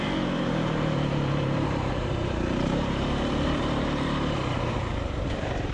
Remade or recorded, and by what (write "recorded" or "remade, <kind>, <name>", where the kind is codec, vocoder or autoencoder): remade, vocoder, BigVGAN v2